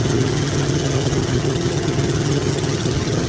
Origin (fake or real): fake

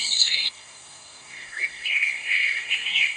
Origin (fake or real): fake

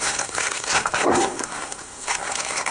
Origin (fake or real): fake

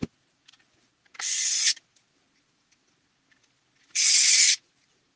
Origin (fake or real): real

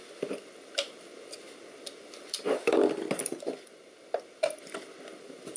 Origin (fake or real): real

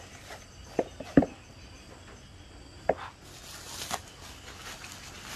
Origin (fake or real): real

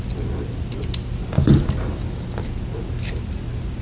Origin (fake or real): real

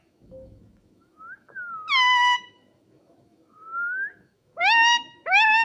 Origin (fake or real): fake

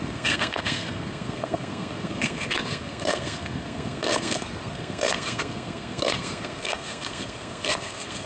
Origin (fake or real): fake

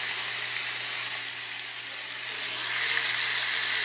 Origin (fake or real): real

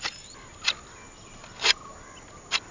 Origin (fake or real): real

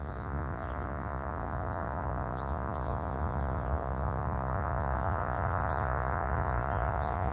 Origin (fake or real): fake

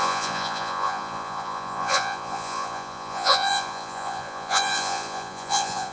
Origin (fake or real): fake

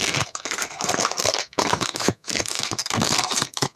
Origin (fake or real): fake